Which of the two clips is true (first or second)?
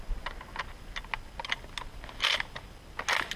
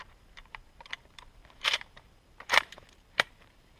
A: first